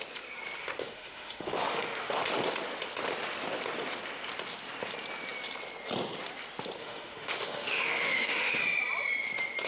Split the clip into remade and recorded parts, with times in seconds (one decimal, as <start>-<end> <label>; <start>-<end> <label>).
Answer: 0.0-0.6 recorded; 0.6-2.2 remade; 2.2-6.8 recorded; 6.8-8.6 remade; 8.6-9.7 recorded